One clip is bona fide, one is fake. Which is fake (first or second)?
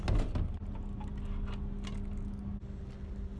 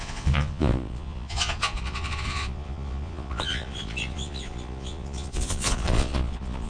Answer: second